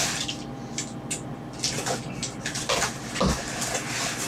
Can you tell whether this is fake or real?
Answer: real